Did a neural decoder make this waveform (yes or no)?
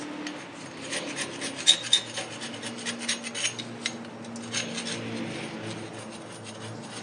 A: no